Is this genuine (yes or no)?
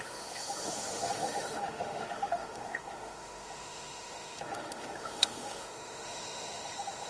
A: no